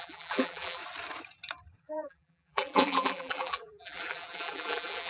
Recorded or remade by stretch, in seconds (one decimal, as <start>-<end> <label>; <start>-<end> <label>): 0.0-0.8 remade; 0.8-1.8 recorded; 1.8-5.1 remade